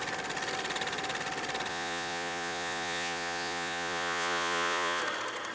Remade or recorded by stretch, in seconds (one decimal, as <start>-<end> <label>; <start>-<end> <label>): 0.0-1.7 recorded; 1.7-5.0 remade; 5.0-5.5 recorded